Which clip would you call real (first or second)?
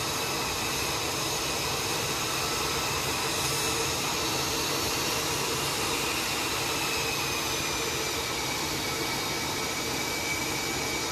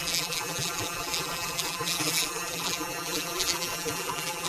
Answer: first